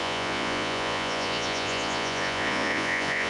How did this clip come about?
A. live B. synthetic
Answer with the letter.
B